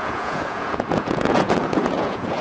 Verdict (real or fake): fake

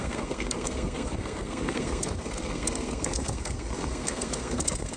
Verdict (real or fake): fake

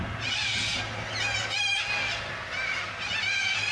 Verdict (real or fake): real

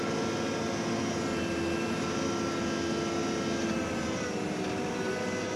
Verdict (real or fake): real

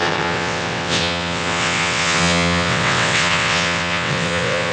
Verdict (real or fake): fake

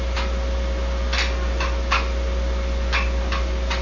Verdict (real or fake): real